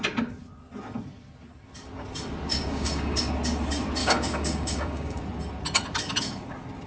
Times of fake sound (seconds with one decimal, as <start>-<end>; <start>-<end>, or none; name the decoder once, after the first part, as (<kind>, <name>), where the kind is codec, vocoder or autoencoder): 2.5-3.3 (codec, DAC); 4.0-5.2

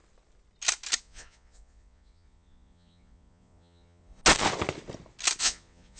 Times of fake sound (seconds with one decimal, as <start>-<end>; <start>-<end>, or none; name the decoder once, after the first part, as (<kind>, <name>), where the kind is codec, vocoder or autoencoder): 1.0-4.2 (vocoder, Vocos); 5.4-6.0

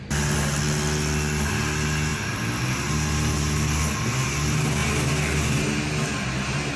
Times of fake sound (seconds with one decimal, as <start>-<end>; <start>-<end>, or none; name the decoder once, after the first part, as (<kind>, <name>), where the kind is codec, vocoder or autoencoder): none

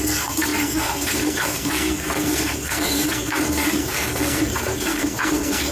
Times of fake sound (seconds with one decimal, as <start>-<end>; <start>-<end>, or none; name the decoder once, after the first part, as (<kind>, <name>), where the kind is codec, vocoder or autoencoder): 0.0-5.7 (codec, SNAC)

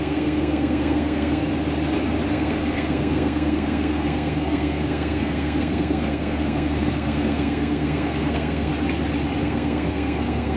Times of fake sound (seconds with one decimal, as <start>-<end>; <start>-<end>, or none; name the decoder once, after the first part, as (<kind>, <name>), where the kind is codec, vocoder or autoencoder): 0.0-1.5 (codec, SNAC); 2.3-8.7; 9.4-10.6

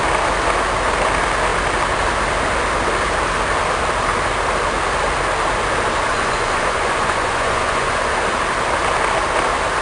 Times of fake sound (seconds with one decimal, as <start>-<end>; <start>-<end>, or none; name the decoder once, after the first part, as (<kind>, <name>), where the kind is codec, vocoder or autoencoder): 6.1-8.1 (vocoder, Vocos)

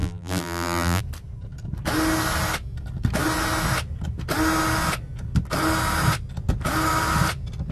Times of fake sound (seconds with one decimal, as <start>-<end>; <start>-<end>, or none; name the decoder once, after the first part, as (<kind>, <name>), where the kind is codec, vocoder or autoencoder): 0.0-1.0 (vocoder, BigVGAN v2)